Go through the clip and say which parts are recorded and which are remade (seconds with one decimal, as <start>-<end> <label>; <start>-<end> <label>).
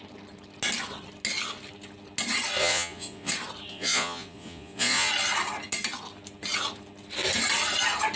0.0-2.6 recorded; 2.6-3.3 remade; 3.3-3.7 recorded; 3.7-5.1 remade; 5.1-8.2 recorded